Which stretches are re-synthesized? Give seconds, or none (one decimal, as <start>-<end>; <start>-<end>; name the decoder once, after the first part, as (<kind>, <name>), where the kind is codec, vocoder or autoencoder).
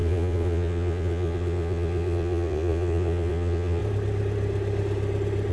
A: 0.0-3.8 (vocoder, Vocos)